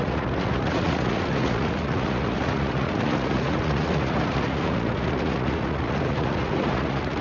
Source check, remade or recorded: remade